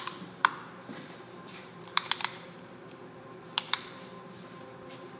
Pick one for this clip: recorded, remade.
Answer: remade